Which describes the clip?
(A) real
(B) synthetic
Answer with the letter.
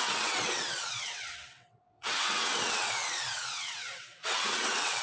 B